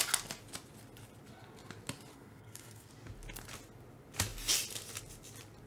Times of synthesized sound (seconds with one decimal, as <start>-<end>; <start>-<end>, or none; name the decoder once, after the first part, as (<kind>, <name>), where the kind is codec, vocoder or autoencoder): 2.1-2.9 (codec, SNAC)